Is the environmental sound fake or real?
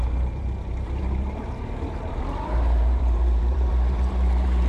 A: fake